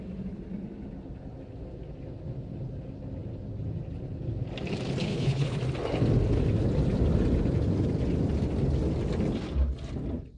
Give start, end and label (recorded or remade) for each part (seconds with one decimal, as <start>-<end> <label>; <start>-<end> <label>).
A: 0.0-5.0 recorded; 5.0-5.6 remade; 5.6-10.4 recorded